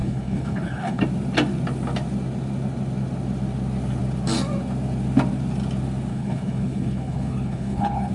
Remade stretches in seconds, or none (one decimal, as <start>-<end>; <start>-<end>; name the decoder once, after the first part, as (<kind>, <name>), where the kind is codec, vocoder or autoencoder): 0.0-1.0 (codec, HILCodec); 6.1-8.1